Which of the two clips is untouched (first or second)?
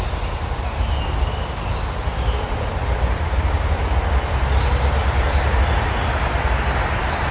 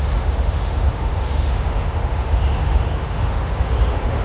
first